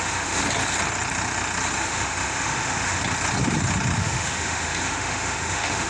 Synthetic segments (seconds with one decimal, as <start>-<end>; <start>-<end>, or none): 0.0-0.4; 1.8-3.0; 4.0-5.9